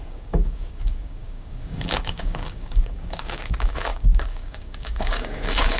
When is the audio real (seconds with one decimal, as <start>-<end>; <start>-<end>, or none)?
none